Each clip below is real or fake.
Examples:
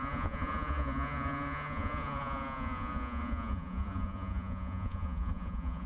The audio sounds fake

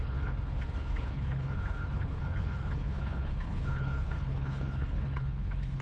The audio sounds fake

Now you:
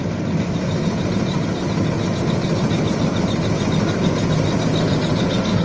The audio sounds real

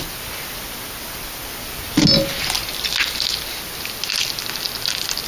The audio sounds real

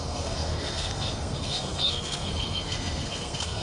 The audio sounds fake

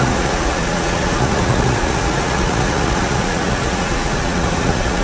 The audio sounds fake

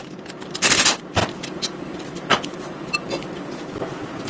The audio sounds real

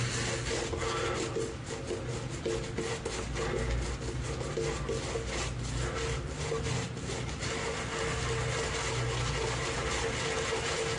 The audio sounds real